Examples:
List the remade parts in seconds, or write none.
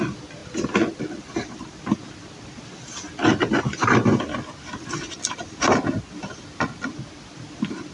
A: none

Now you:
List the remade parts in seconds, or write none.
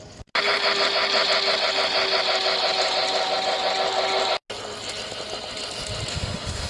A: 6.1-6.7 (autoencoder, DAC-VAE)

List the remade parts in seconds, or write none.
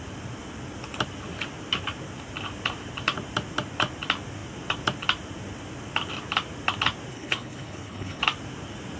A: 7.1-8.2 (codec, HILCodec)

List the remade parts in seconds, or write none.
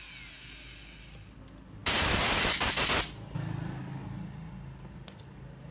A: none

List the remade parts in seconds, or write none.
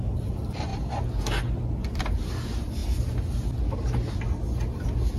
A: none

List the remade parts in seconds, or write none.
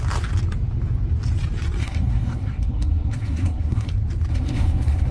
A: 1.8-3.9 (codec, SNAC); 4.3-5.1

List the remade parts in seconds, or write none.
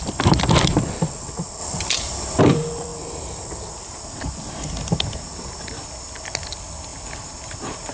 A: 0.0-6.9 (vocoder, BigVGAN v2)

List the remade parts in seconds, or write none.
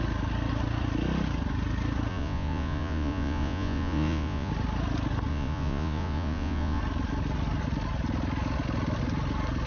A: 2.1-4.5 (vocoder, Vocos); 5.3-6.8